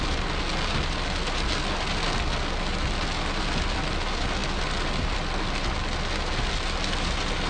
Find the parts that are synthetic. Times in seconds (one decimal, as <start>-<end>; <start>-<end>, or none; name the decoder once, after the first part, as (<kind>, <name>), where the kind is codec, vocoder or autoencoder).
none

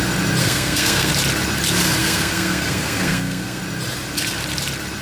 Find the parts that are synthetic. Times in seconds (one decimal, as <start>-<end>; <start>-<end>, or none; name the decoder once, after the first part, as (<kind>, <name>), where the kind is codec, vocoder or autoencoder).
0.4-1.1 (codec, SNAC); 2.0-3.6

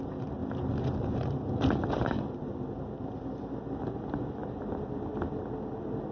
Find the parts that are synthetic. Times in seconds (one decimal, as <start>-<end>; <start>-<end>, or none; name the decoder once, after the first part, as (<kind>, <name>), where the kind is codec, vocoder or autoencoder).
none

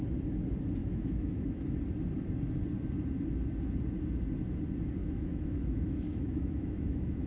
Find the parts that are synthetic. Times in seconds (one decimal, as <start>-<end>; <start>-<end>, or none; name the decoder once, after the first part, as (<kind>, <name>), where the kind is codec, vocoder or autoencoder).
0.8-1.6 (autoencoder, DAC-VAE); 5.0-7.3

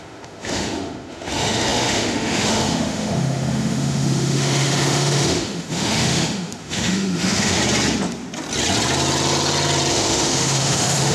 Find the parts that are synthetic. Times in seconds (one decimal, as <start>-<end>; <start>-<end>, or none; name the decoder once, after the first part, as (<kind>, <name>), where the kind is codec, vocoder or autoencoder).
0.0-7.6 (autoencoder, DAC-VAE); 9.9-11.1